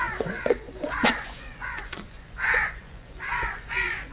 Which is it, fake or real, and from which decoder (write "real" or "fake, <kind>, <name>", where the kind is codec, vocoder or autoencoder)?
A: fake, vocoder, Vocos